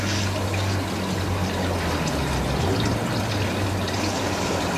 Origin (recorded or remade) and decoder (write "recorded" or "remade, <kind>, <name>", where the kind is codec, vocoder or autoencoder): recorded